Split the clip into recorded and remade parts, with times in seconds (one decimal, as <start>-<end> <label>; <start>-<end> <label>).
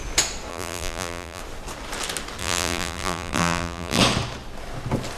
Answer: 0.0-0.5 recorded; 0.5-1.4 remade; 1.4-2.4 recorded; 2.4-4.0 remade; 4.0-5.2 recorded